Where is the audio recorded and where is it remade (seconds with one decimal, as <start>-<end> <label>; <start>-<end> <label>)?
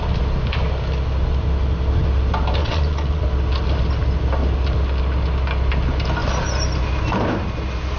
0.0-2.6 recorded; 2.6-3.2 remade; 3.2-8.0 recorded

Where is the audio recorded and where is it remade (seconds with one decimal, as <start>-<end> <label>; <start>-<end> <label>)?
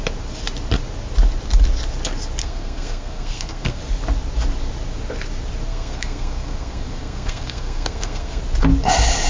0.0-2.4 recorded; 2.4-3.8 remade; 3.8-5.7 recorded; 5.7-8.4 remade; 8.4-9.3 recorded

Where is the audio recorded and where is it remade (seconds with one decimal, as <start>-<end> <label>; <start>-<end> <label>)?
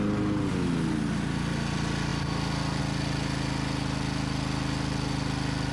0.0-5.7 recorded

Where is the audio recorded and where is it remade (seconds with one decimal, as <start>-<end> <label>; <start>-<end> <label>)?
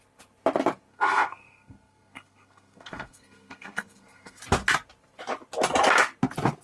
0.0-0.9 recorded; 0.9-4.4 remade; 4.4-6.6 recorded